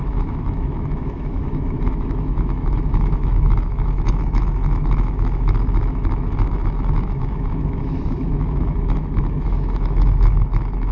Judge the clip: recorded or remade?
remade